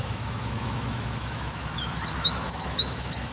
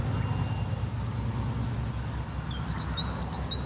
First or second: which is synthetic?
first